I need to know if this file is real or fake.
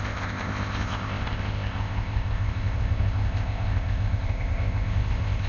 fake